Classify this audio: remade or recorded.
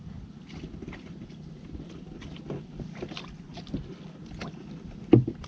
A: recorded